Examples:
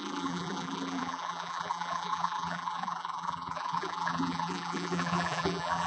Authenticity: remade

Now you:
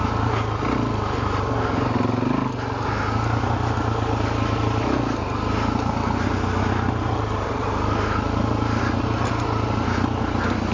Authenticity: recorded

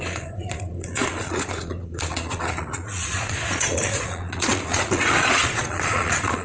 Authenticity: remade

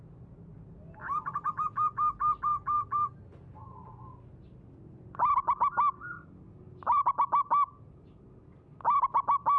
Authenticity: recorded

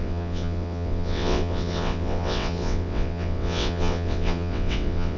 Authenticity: remade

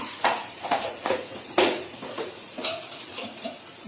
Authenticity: remade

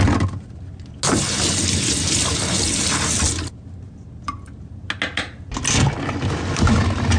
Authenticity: recorded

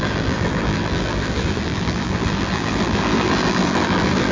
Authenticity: remade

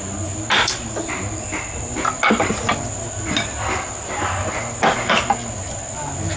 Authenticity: recorded